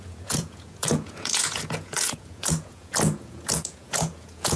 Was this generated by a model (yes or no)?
yes